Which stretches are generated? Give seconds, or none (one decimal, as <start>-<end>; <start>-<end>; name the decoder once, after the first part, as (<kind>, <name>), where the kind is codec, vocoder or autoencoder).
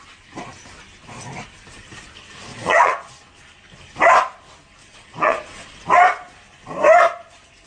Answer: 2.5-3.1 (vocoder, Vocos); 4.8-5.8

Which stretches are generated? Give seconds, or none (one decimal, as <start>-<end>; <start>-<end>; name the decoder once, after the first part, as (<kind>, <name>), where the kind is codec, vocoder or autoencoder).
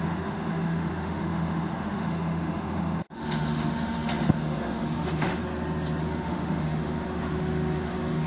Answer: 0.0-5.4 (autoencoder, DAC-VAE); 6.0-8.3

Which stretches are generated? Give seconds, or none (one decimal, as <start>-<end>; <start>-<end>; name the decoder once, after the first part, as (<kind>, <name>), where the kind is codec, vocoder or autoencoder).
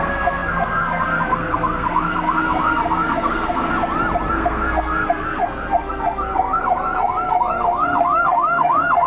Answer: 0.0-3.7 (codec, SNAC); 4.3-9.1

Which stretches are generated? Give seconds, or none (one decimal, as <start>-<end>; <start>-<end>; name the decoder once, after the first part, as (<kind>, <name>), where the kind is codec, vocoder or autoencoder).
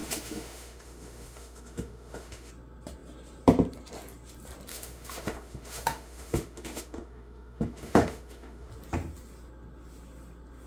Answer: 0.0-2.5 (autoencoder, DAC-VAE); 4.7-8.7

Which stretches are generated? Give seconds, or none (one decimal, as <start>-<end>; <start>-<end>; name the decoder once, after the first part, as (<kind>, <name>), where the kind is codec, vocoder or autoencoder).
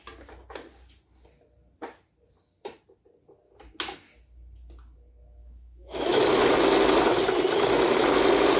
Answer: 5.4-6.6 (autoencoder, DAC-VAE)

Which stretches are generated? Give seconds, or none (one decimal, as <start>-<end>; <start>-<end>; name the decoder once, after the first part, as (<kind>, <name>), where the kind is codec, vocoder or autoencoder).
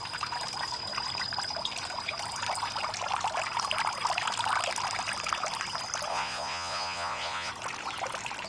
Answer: 6.1-7.5 (vocoder, Vocos)